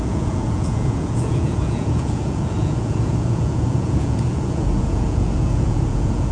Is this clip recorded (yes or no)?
no